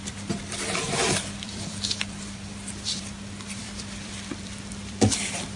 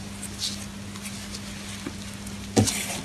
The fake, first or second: first